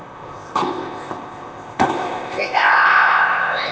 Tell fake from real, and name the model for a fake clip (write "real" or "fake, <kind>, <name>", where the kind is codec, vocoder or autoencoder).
fake, codec, ZipCodec